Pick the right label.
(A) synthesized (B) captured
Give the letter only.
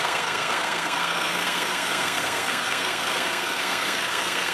A